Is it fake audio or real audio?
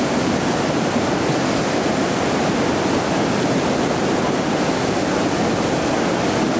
real